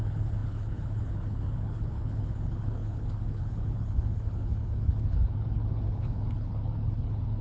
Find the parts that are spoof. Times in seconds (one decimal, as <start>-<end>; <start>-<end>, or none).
0.0-7.4